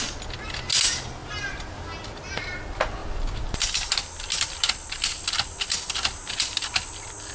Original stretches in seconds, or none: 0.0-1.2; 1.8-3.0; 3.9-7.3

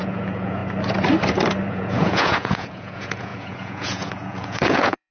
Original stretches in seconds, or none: 0.6-1.7

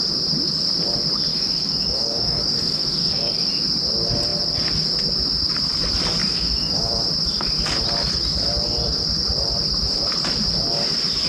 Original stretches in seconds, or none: 0.0-1.3; 3.6-6.2; 7.0-11.3

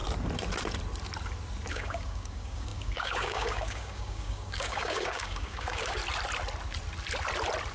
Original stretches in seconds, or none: 0.0-1.7; 6.0-7.7

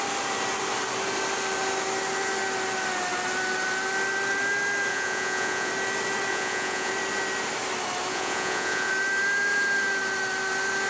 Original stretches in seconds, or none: 0.0-4.9; 5.7-6.3; 6.9-8.1; 8.9-10.9

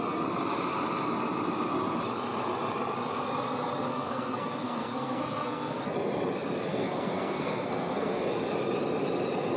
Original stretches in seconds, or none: 0.0-3.9; 5.8-6.7; 8.2-9.6

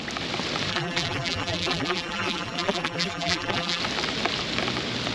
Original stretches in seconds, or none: 0.0-0.7; 3.8-5.1